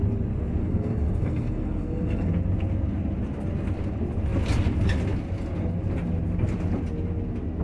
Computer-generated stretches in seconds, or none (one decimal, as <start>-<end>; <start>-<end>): 0.6-2.3